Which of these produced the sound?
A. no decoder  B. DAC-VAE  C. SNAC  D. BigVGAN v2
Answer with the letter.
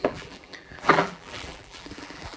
D